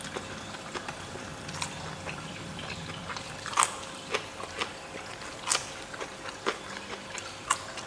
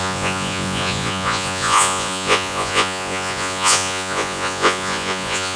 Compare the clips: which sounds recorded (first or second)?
first